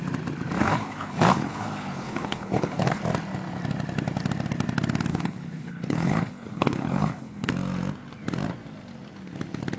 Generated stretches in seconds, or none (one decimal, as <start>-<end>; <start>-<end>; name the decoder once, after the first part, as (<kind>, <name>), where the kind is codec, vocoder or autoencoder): 0.6-3.0 (codec, HILCodec); 5.1-7.5